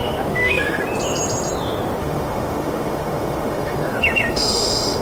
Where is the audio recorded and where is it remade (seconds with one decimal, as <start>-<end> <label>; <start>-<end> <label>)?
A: 0.0-0.8 remade; 0.8-2.0 recorded; 2.0-5.0 remade